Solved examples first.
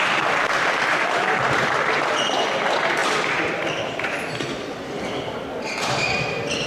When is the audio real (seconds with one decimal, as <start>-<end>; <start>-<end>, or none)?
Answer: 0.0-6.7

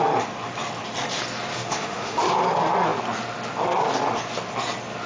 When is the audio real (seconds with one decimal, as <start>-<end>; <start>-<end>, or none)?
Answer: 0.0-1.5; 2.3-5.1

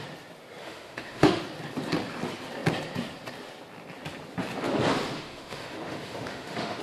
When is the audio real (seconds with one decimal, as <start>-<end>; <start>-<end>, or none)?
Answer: 0.0-0.6; 1.4-5.3

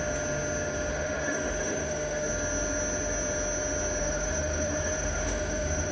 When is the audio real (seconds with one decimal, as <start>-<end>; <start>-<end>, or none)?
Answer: 0.0-0.9; 2.3-4.0